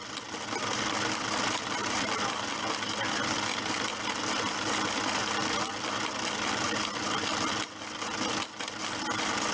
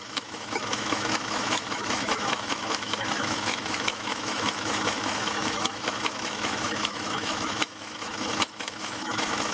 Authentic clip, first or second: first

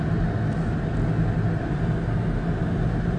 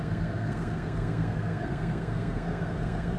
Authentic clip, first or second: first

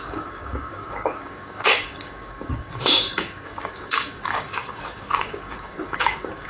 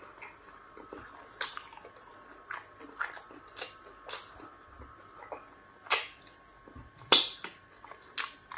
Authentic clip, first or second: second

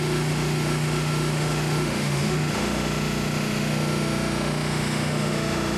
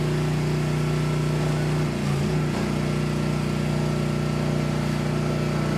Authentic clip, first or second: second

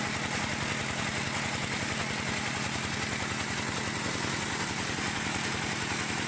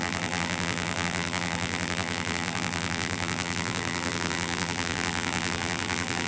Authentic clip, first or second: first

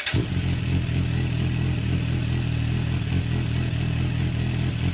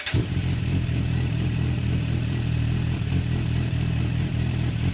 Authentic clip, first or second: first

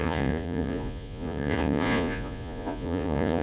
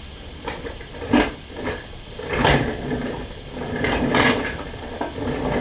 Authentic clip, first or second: second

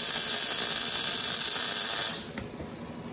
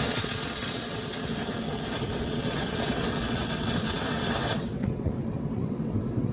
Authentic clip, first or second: first